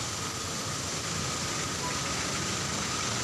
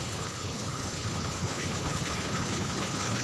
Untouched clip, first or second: first